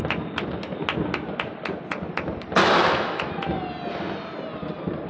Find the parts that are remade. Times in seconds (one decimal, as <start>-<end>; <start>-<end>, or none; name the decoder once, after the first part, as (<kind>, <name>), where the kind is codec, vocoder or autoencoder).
2.6-3.3 (autoencoder, DAC-VAE)